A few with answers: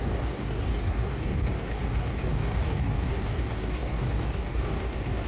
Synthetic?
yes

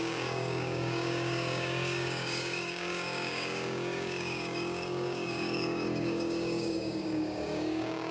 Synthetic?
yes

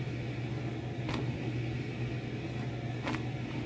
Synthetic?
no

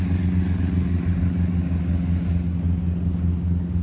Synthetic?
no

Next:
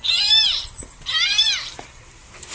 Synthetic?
no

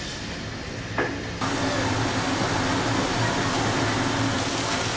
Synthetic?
no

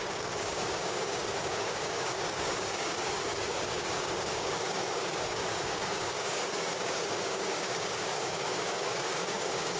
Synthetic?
yes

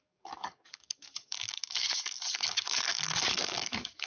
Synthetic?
yes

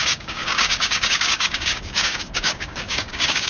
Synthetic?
yes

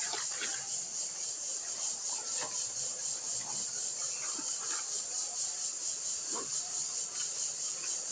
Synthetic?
no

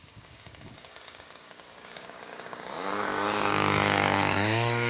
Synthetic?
yes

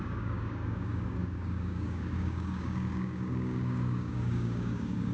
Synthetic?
yes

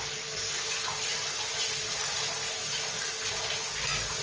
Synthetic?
no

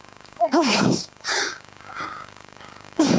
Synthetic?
yes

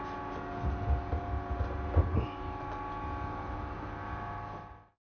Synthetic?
no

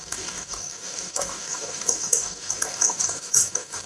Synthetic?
yes